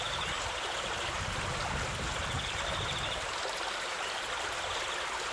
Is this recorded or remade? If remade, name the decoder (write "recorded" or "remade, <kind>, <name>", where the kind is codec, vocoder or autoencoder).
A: recorded